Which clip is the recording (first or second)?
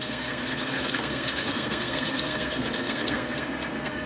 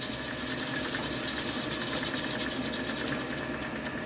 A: second